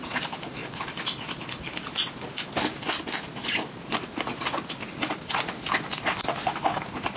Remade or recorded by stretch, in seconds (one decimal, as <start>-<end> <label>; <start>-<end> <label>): 0.0-7.2 recorded